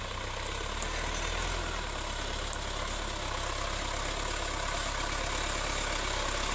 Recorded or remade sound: recorded